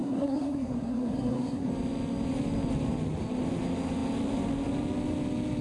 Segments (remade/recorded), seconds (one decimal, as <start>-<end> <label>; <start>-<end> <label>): 0.0-1.7 remade; 1.7-5.6 recorded